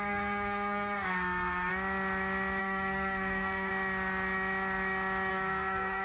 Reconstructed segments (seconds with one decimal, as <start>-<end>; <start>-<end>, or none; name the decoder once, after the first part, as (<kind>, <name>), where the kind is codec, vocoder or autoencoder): 0.0-1.7 (codec, SNAC); 2.6-3.7; 5.3-6.0